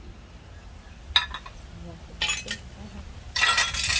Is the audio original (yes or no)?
yes